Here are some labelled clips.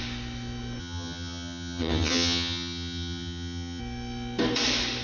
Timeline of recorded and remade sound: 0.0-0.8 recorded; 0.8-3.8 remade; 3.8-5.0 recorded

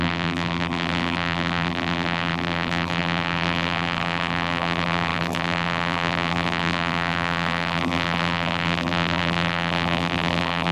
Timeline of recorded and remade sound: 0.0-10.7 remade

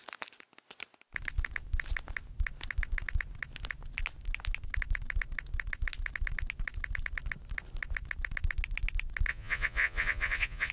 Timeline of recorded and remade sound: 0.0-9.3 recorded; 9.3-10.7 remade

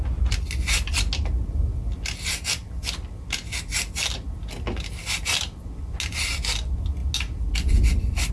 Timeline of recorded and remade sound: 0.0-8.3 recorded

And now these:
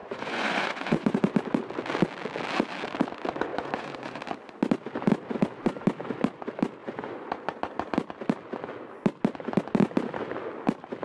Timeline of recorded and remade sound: 0.0-1.2 remade; 1.2-3.5 recorded; 3.5-4.2 remade; 4.2-6.8 recorded; 6.8-7.6 remade; 7.6-11.0 recorded

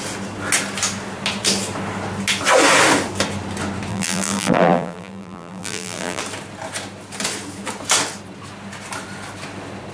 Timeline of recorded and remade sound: 0.0-3.9 recorded; 3.9-6.2 remade; 6.2-9.9 recorded

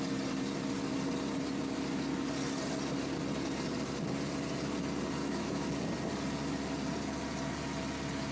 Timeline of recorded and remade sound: 0.0-5.2 recorded; 5.2-5.7 remade; 5.7-8.3 recorded

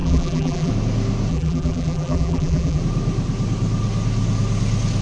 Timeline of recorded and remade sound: 0.0-0.7 remade; 0.7-1.3 recorded; 1.3-2.8 remade; 2.8-5.0 recorded